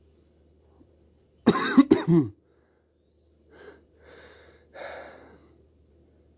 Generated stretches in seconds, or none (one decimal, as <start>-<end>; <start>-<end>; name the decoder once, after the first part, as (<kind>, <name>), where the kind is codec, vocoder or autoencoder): 0.0-2.1 (vocoder, BigVGAN v2); 5.9-6.4